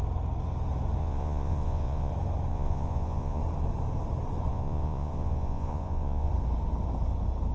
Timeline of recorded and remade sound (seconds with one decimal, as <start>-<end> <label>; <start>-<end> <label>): 0.0-1.0 recorded; 1.0-2.1 remade; 2.1-2.5 recorded; 2.5-3.4 remade; 3.4-4.5 recorded; 4.5-6.3 remade; 6.3-7.5 recorded